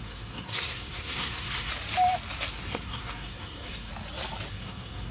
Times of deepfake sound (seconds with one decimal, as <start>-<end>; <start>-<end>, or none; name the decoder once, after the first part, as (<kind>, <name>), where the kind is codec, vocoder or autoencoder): 0.0-1.7 (codec, SNAC); 2.5-3.9; 4.5-5.1

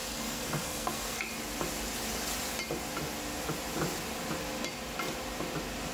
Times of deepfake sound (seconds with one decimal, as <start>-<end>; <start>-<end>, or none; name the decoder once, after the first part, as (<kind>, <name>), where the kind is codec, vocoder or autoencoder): 0.0-1.3 (codec, SNAC)

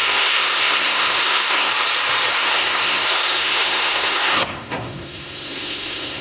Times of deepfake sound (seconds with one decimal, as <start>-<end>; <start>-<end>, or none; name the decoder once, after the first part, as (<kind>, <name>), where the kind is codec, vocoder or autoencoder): 0.0-1.7 (codec, SNAC); 2.3-6.2

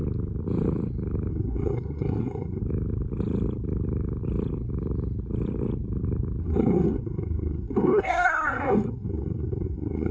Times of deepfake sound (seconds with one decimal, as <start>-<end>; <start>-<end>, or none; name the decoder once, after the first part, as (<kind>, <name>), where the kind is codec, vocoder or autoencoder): 1.3-2.6 (codec, SNAC); 6.4-10.1

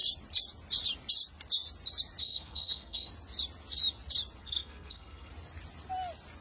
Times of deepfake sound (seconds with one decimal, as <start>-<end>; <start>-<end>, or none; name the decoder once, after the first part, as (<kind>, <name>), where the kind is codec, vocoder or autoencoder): 2.2-3.1 (codec, SNAC); 4.4-5.3

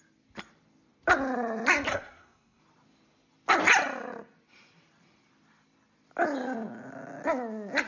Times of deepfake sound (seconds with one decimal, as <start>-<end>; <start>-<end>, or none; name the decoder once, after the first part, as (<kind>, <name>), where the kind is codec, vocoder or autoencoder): 1.9-2.6 (codec, SNAC)

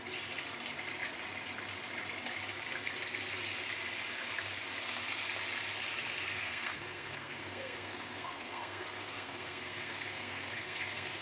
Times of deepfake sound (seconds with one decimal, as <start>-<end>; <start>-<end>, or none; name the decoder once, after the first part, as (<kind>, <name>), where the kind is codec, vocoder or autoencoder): 6.3-11.2 (codec, SNAC)